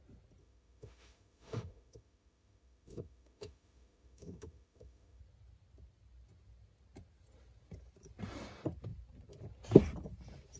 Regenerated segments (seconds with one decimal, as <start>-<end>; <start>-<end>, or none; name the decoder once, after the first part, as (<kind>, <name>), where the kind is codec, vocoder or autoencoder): 0.4-5.2 (autoencoder, DAC-VAE)